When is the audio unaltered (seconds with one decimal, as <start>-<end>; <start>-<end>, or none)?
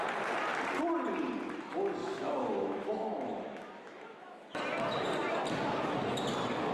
0.0-2.0; 4.6-6.7